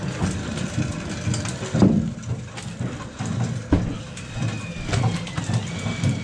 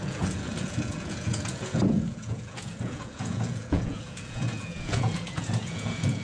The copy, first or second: second